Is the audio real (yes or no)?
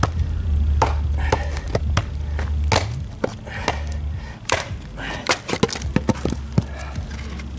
yes